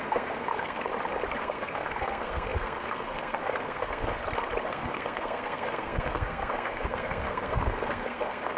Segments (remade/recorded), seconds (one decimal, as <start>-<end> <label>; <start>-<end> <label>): 0.0-0.9 remade; 0.9-1.4 recorded; 1.4-4.2 remade; 4.2-4.7 recorded; 4.7-8.6 remade